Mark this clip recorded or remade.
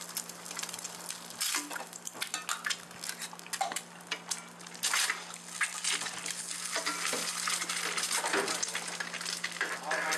recorded